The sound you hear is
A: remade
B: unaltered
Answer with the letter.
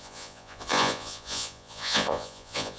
A